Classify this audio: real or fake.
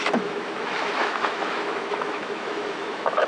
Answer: fake